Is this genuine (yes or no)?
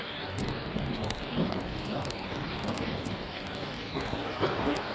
no